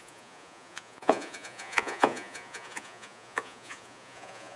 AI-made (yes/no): yes